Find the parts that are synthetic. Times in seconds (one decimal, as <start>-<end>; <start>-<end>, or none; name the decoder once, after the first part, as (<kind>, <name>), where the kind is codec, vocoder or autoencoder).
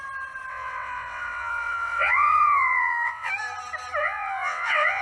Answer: 0.5-3.3 (vocoder, WaveNeXt); 4.0-5.0